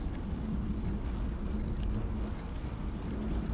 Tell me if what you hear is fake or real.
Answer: real